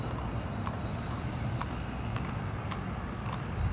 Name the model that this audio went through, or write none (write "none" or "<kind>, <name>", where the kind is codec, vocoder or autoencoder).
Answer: none